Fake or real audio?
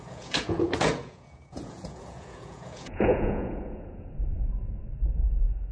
fake